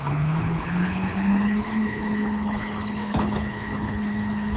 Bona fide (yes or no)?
no